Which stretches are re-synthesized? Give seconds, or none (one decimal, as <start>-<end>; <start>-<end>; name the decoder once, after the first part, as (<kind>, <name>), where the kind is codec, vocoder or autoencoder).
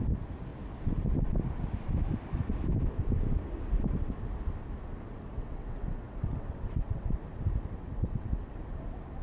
5.4-7.2 (vocoder, WaveNeXt); 7.8-8.5